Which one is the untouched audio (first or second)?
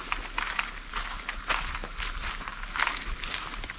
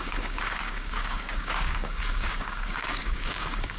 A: first